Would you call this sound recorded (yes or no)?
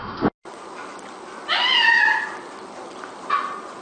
yes